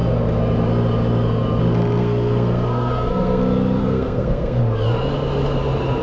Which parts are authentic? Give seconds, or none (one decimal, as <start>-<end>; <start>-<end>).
0.0-2.0; 3.4-3.8; 4.6-6.0